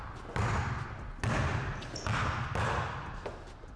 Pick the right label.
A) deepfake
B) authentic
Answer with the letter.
B